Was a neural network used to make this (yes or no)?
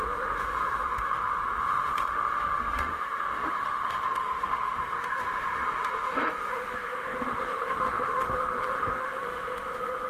yes